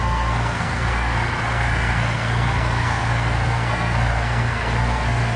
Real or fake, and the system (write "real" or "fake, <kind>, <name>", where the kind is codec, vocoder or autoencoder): fake, codec, SNAC